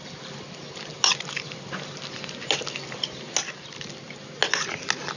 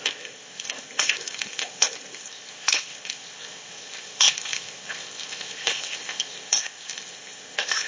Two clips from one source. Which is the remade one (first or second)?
second